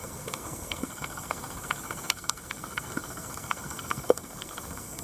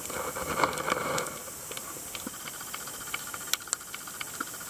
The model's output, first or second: first